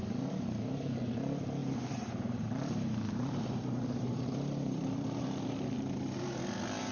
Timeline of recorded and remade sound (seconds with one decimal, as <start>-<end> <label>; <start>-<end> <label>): 0.0-1.6 recorded; 1.6-5.6 remade; 5.6-6.9 recorded